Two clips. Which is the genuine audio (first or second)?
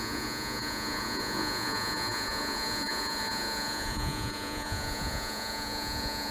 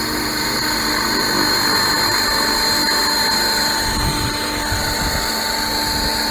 second